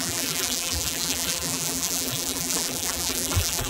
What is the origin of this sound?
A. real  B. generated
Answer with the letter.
B